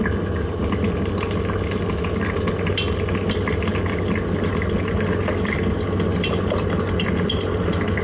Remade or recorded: recorded